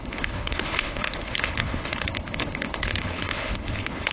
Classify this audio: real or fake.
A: fake